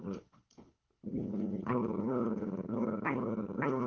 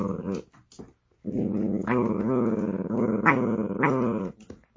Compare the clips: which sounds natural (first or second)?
second